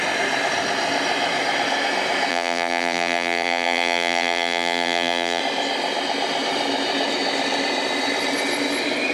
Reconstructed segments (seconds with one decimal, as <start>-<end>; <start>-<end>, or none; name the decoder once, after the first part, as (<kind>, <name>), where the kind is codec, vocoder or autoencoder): 2.3-5.4 (vocoder, BigVGAN v2)